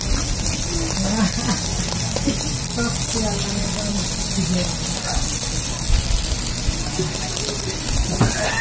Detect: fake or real real